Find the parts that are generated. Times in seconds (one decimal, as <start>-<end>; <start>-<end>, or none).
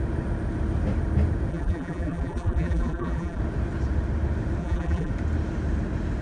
1.5-3.4; 4.6-5.1